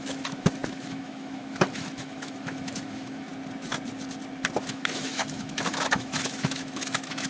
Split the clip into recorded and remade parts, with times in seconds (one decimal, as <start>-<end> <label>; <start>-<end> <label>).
0.0-3.3 remade; 3.3-4.6 recorded; 4.6-7.3 remade